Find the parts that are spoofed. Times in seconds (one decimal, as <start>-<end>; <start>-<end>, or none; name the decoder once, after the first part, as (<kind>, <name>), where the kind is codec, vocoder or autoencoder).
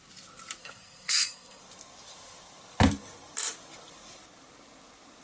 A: 0.6-1.6 (codec, SNAC)